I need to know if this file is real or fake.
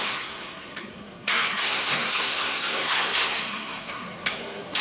fake